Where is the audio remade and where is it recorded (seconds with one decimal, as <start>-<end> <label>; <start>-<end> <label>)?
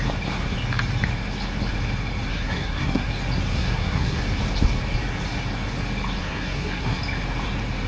0.0-2.3 recorded; 2.3-3.1 remade; 3.1-3.5 recorded; 3.5-4.2 remade; 4.2-6.2 recorded; 6.2-7.0 remade; 7.0-7.9 recorded